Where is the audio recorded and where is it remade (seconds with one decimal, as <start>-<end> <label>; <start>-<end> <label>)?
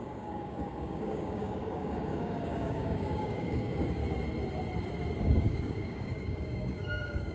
0.0-4.0 remade; 4.0-5.2 recorded; 5.2-7.3 remade